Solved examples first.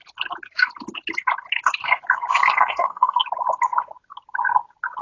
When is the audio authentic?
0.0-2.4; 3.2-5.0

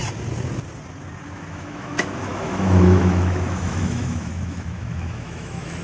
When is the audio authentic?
0.0-1.5

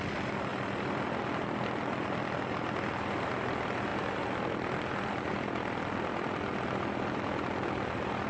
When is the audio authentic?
0.0-8.3

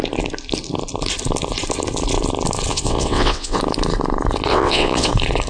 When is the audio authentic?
0.0-2.7; 3.6-4.5; 5.1-5.5

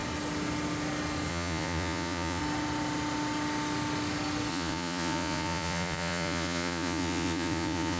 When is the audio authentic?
0.0-1.3; 2.4-4.5

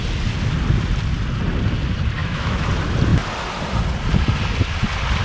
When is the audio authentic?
0.0-2.2; 2.7-5.2

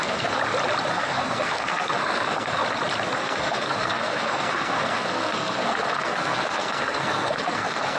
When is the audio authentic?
0.4-0.9; 2.6-3.2

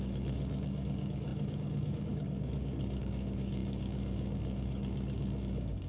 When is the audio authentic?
none